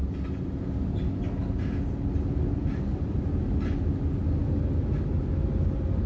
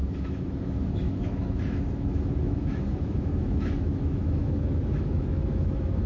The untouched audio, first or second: first